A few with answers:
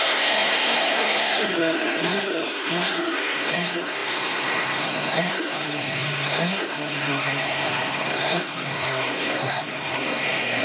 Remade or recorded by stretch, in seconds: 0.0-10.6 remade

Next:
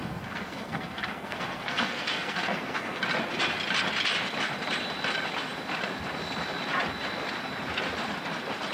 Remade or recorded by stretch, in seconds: 0.0-3.0 remade; 3.0-8.7 recorded